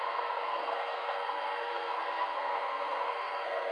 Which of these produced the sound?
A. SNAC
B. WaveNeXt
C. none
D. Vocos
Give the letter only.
A